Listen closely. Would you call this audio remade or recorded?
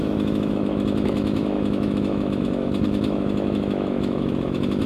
remade